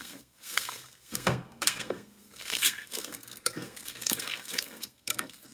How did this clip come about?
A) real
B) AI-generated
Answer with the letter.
B